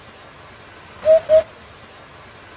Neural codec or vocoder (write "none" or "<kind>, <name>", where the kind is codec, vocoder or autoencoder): none